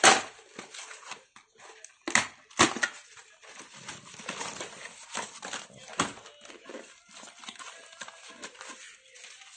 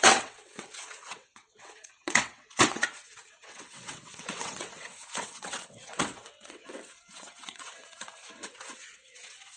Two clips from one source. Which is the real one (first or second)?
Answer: first